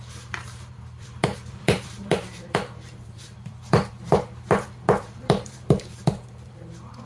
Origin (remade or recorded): remade